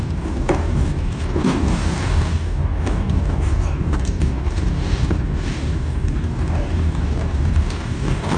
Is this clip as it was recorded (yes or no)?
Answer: no